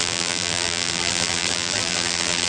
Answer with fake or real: fake